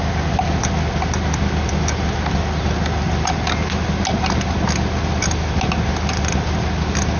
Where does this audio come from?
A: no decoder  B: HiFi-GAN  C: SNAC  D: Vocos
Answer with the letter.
A